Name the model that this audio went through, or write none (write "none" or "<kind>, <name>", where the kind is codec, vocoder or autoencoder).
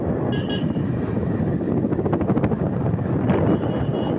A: none